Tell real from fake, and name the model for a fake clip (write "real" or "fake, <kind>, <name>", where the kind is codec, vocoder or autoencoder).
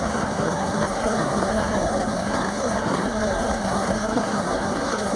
fake, codec, SNAC